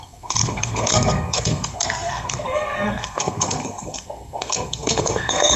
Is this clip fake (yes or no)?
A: yes